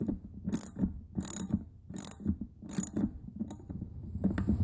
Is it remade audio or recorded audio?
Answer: recorded